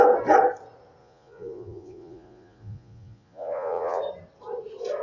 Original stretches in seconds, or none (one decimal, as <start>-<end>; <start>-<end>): 0.0-1.0; 4.0-5.0